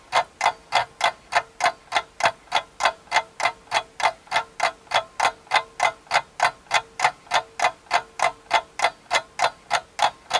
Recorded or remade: recorded